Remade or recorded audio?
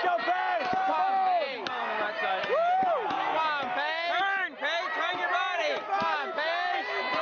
recorded